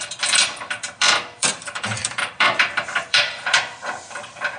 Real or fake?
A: fake